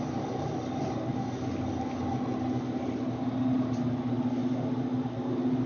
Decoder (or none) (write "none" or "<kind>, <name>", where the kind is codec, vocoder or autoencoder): none